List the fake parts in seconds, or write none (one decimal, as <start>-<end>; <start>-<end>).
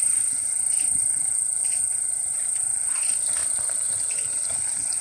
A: 1.6-2.1; 3.4-4.5